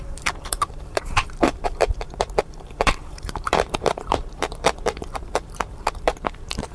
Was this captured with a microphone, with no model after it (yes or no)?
no